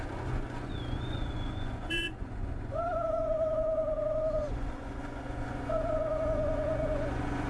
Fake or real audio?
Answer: fake